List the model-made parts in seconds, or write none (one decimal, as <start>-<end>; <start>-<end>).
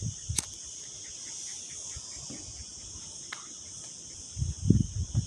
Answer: none